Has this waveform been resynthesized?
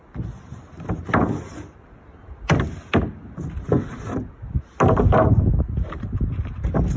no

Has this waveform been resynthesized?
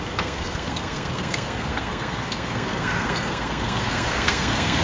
yes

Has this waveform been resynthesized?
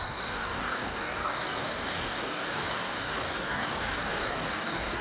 yes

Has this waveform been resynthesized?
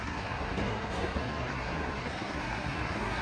yes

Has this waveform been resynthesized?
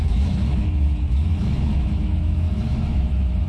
yes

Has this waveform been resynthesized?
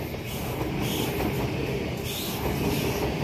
no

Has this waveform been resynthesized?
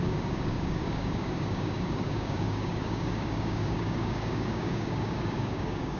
yes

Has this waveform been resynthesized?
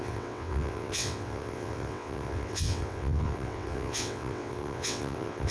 yes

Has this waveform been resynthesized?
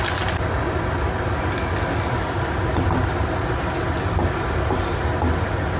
no